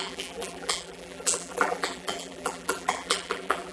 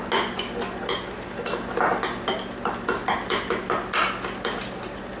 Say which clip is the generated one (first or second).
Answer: first